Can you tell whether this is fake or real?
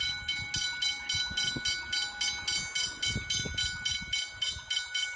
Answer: real